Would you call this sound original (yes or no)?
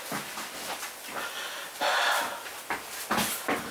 yes